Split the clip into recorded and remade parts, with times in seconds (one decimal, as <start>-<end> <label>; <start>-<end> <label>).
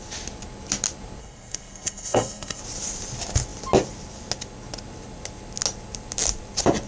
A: 0.0-1.2 recorded; 1.2-2.6 remade; 2.6-6.9 recorded